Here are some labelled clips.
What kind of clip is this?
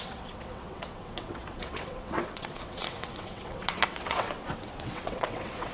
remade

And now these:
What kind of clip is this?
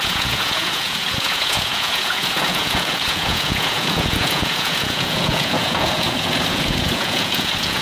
remade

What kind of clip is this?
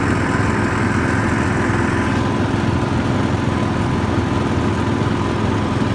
recorded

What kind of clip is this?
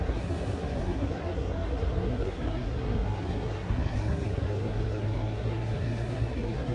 remade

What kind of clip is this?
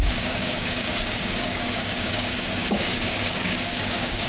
remade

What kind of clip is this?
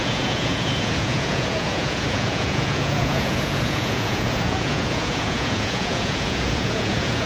remade